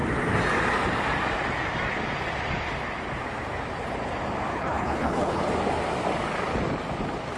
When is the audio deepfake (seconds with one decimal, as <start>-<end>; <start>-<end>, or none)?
4.5-5.4